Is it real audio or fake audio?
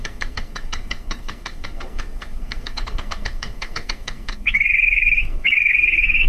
fake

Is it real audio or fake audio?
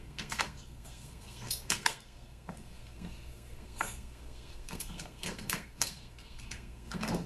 fake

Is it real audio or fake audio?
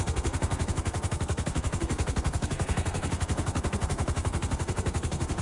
fake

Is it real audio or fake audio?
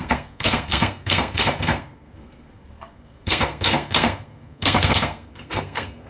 fake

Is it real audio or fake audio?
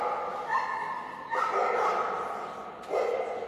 real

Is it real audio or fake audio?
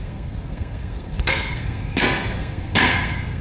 fake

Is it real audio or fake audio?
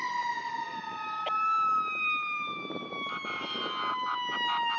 real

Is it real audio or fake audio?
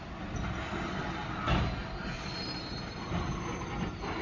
real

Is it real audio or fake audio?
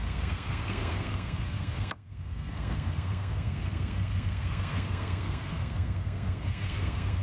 fake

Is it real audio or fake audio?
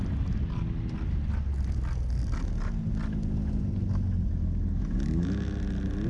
real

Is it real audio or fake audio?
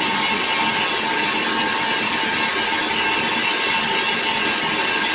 real